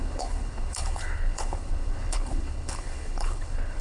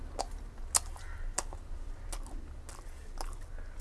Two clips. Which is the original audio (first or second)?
second